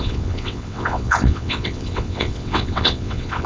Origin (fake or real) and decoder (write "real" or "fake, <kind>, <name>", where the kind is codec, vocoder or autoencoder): fake, vocoder, WaveNeXt